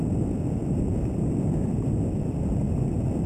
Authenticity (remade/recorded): recorded